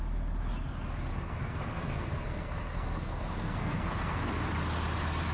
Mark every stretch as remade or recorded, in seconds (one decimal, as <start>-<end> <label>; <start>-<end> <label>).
0.0-1.1 recorded; 1.1-4.3 remade; 4.3-5.3 recorded